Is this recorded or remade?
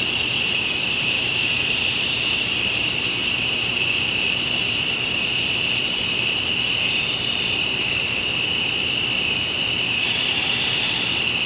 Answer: remade